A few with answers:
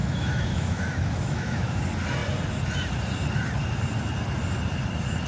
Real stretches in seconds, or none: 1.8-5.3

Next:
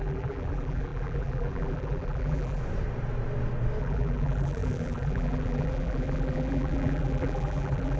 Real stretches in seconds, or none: 2.6-3.8